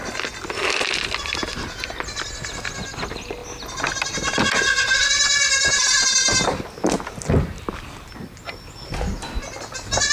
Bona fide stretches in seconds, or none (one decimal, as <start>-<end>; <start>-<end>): 0.0-10.1